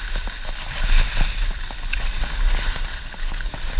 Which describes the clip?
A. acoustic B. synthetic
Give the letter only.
A